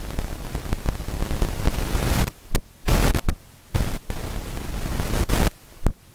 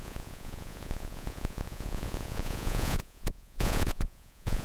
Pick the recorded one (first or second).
first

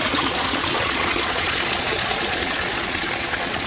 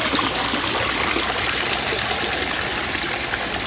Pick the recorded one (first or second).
second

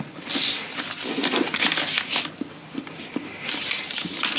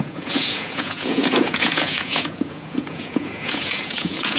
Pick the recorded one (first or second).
first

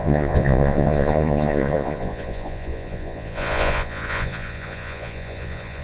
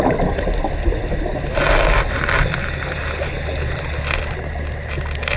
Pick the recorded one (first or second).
second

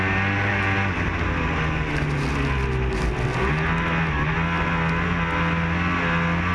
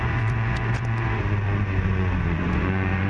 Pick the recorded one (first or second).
first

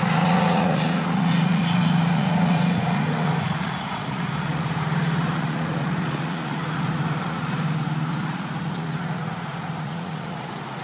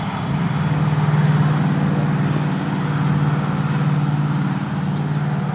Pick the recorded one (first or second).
second